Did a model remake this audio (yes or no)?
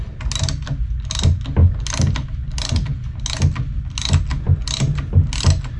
no